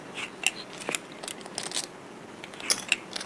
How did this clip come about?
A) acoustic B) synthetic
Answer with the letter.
A